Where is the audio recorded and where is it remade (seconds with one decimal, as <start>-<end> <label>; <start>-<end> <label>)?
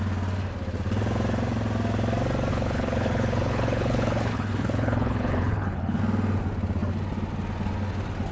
0.0-2.5 recorded; 2.5-6.0 remade; 6.0-8.3 recorded